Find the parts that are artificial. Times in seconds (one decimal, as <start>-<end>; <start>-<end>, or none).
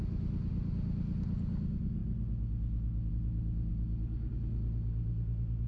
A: none